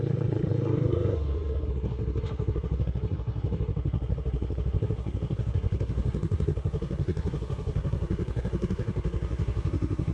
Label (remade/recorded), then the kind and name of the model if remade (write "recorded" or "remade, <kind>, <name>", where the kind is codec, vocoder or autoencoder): remade, codec, SNAC